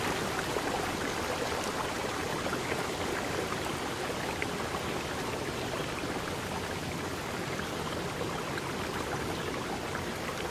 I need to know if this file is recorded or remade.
recorded